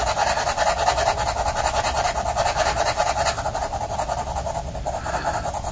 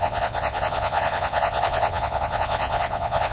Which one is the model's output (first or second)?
second